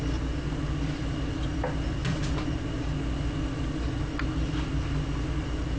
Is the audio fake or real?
real